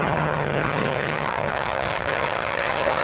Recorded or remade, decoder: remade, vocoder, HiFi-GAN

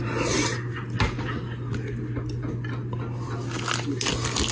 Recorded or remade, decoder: recorded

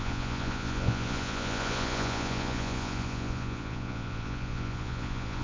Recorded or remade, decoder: remade, vocoder, Vocos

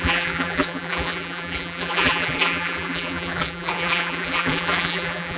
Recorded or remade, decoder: remade, vocoder, BigVGAN v2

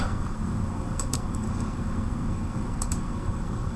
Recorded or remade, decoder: remade, codec, SNAC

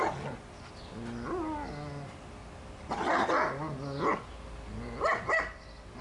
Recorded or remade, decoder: recorded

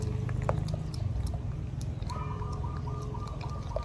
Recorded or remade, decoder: recorded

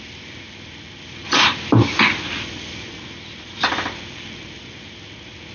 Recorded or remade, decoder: recorded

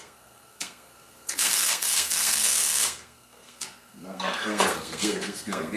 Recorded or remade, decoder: remade, codec, SNAC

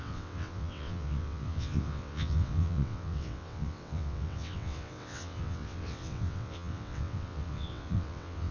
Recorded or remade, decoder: remade, vocoder, WaveNeXt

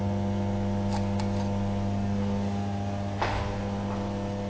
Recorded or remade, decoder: recorded